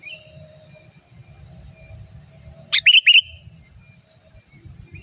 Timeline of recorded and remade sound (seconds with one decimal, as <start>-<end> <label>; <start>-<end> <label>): 0.0-5.0 recorded